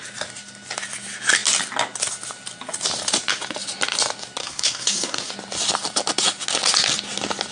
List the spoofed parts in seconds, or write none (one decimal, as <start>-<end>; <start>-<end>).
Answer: 4.4-5.3